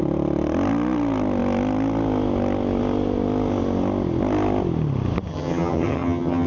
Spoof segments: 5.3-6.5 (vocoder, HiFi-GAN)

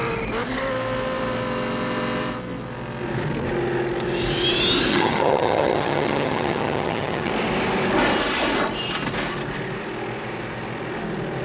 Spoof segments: 4.9-7.3 (vocoder, HiFi-GAN)

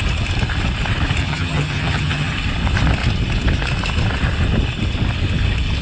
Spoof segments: 1.2-2.3 (vocoder, HiFi-GAN)

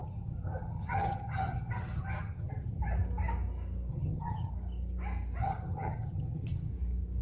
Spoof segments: 0.0-2.8 (vocoder, HiFi-GAN); 3.9-4.5; 5.4-6.7